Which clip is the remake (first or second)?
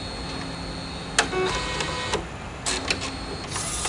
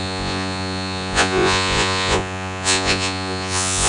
second